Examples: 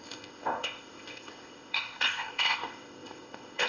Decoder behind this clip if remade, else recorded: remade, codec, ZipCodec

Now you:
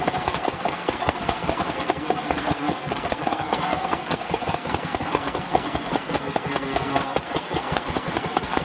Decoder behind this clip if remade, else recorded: remade, codec, SNAC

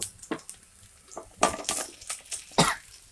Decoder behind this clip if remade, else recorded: recorded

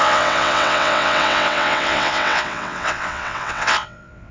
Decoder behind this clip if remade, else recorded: remade, vocoder, WaveNeXt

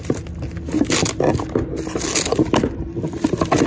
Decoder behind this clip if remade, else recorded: recorded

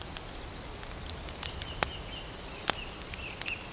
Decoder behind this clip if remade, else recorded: recorded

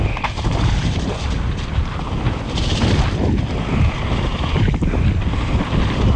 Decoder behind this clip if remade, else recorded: remade, vocoder, BigVGAN v2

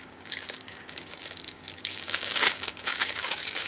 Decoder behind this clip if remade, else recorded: remade, codec, DAC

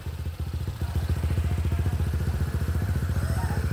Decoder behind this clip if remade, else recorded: remade, vocoder, BigVGAN v2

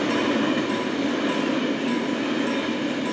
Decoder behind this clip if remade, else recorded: recorded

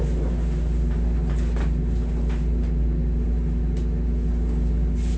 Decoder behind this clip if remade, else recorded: recorded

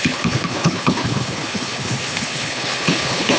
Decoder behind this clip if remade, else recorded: remade, codec, HILCodec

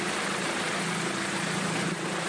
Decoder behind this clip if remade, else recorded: recorded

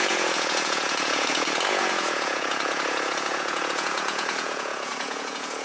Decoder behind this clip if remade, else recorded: remade, vocoder, Vocos